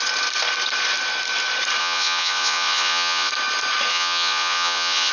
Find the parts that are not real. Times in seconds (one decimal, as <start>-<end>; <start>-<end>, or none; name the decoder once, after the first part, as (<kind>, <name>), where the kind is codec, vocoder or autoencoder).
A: 1.8-3.3 (vocoder, Vocos); 3.9-5.1